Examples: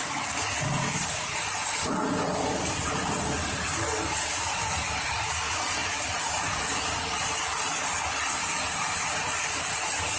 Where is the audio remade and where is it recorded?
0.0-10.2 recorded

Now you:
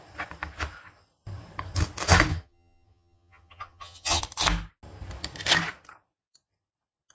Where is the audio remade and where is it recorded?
0.0-2.3 recorded; 2.3-4.2 remade; 4.2-7.1 recorded

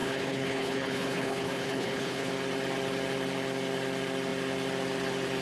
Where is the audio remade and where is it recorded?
0.0-2.3 remade; 2.3-5.4 recorded

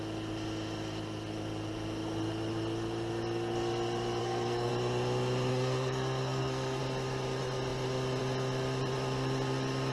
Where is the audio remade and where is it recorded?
0.0-4.2 recorded; 4.2-4.7 remade; 4.7-5.5 recorded; 5.5-6.8 remade; 6.8-9.9 recorded

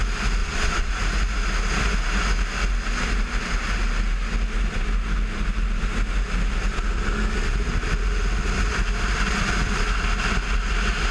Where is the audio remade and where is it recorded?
0.0-0.4 recorded; 0.4-0.9 remade; 0.9-11.1 recorded

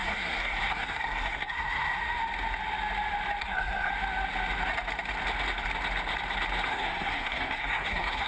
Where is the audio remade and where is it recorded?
0.0-2.0 remade; 2.0-3.4 recorded; 3.4-3.9 remade; 3.9-6.7 recorded; 6.7-8.3 remade

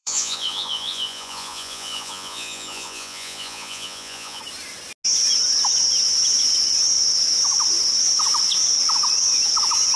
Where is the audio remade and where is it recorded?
0.0-4.4 remade; 4.4-10.0 recorded